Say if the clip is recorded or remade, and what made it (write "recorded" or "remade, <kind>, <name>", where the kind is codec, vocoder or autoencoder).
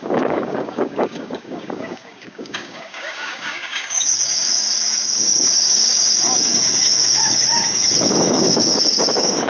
remade, codec, DAC